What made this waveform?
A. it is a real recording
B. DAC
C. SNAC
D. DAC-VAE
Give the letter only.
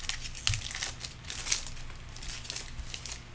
A